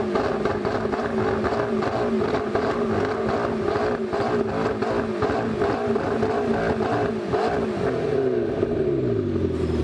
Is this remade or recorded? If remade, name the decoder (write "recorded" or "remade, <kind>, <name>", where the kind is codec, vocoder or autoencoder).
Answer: recorded